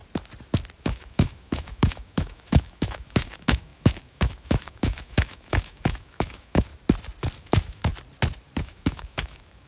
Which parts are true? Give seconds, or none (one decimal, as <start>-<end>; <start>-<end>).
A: 0.0-0.8; 6.7-7.4; 7.9-8.6

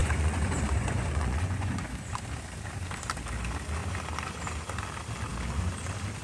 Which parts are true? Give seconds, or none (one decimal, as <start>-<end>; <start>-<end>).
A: 1.9-6.2

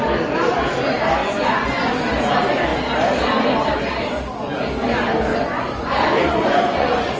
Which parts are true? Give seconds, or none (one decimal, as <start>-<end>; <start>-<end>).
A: 0.0-1.2; 1.9-5.3

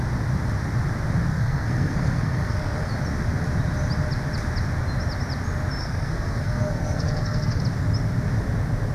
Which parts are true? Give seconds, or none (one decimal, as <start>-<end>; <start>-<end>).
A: 0.0-1.3; 2.9-5.8; 7.6-8.9

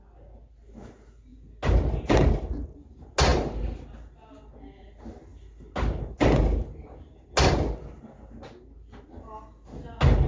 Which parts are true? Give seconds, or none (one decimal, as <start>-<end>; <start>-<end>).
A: 0.0-10.3

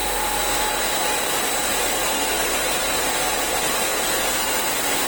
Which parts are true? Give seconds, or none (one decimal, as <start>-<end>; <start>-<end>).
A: 0.0-5.1